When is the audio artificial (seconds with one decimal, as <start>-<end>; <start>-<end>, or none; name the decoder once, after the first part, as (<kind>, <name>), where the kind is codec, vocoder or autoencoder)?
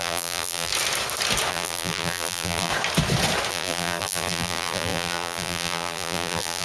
0.0-0.7 (vocoder, BigVGAN v2); 1.5-2.7; 3.5-6.6